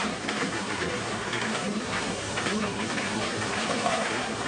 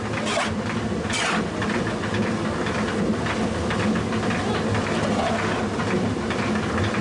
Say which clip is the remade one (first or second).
first